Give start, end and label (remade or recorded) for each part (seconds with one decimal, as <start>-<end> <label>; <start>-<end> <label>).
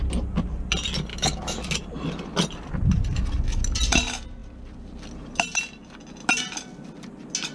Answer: 0.0-1.1 recorded; 1.1-1.7 remade; 1.7-7.5 recorded